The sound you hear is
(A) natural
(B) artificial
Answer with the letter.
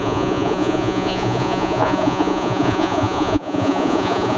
B